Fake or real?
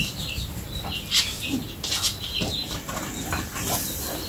real